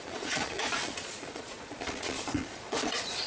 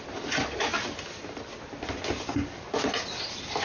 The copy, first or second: first